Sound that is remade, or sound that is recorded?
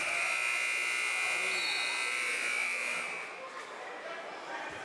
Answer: recorded